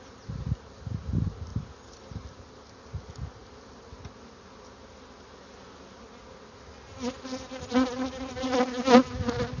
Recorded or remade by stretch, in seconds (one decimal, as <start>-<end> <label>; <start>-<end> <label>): 0.0-9.6 recorded

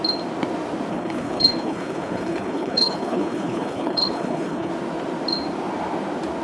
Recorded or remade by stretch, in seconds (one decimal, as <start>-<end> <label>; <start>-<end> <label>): 0.0-0.9 recorded; 0.9-4.7 remade; 4.7-6.4 recorded

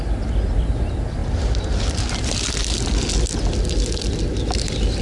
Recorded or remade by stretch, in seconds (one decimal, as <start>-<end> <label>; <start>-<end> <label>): 0.0-5.0 recorded

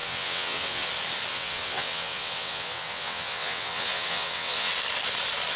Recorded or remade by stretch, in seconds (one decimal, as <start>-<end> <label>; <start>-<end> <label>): 0.0-0.9 remade; 0.9-1.3 recorded; 1.3-4.7 remade; 4.7-5.6 recorded